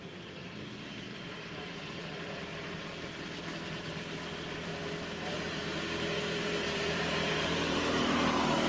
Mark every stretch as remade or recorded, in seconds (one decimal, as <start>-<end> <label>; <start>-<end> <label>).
0.0-2.5 remade; 2.5-3.7 recorded; 3.7-4.7 remade; 4.7-5.3 recorded; 5.3-8.7 remade